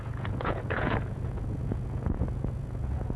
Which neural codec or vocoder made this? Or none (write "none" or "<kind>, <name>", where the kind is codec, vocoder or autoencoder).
vocoder, Vocos